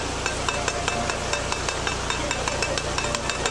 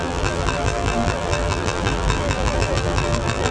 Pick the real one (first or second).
first